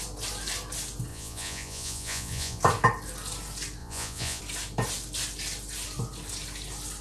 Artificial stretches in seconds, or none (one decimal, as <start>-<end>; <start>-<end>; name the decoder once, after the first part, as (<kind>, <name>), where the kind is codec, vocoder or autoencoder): 1.1-2.6 (vocoder, Vocos); 3.8-4.4